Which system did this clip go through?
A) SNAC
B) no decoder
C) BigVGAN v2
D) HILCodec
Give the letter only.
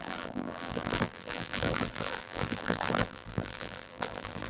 C